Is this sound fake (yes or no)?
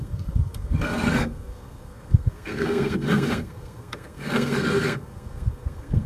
yes